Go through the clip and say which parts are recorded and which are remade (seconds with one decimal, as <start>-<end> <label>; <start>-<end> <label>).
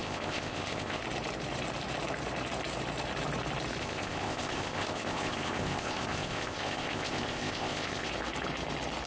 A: 0.0-1.0 remade; 1.0-3.8 recorded; 3.8-8.1 remade; 8.1-9.1 recorded